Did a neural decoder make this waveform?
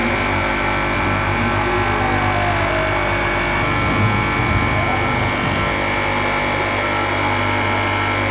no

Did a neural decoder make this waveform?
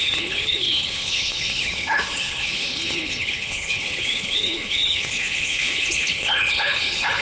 yes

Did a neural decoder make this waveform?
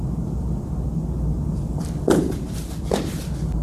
yes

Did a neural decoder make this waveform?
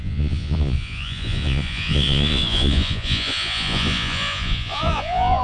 yes